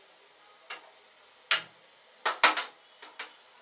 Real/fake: real